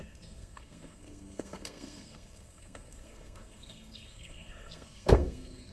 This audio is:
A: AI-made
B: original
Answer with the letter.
A